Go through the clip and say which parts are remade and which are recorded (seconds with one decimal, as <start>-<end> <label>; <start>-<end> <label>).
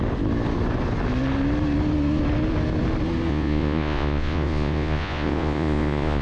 0.0-3.3 recorded; 3.3-6.2 remade